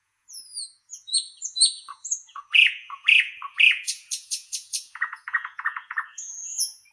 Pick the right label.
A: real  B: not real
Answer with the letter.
B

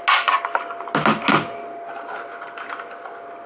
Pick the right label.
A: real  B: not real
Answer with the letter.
A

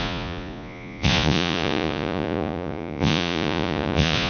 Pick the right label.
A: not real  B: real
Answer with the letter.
A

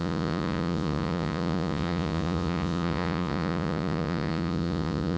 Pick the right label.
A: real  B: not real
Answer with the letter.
B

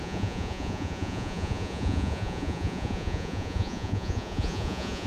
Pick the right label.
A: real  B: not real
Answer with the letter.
B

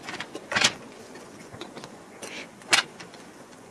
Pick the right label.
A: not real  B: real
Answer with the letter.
A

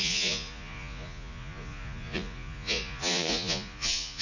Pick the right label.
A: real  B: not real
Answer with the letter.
B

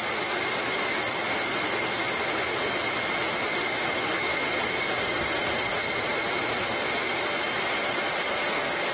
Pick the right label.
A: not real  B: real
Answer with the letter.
B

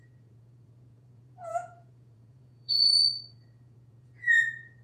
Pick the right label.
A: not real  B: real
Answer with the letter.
A